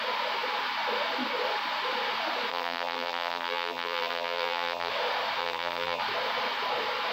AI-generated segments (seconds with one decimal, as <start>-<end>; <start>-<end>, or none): 2.5-4.9; 5.4-6.0